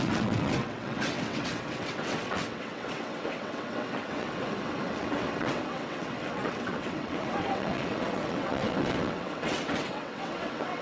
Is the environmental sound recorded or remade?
remade